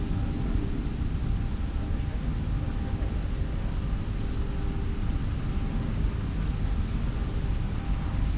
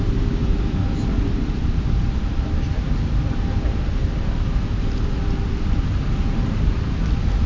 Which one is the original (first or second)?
first